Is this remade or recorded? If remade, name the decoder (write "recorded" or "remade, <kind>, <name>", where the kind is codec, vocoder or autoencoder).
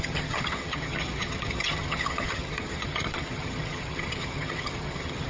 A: remade, vocoder, HiFi-GAN